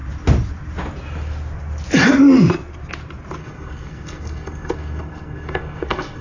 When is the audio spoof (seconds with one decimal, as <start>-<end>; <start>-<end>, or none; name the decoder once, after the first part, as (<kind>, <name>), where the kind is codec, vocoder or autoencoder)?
3.4-6.2 (codec, SNAC)